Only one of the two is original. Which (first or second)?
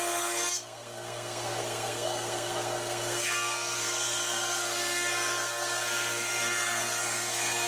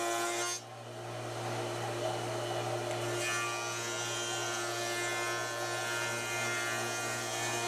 second